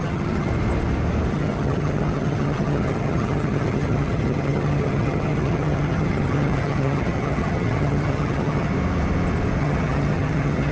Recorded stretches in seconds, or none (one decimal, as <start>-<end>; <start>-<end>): 0.5-1.3; 8.7-9.6